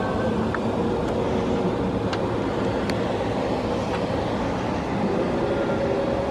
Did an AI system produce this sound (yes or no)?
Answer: no